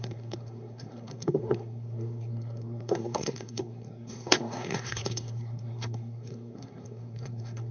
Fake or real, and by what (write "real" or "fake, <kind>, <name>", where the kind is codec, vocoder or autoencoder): fake, codec, SNAC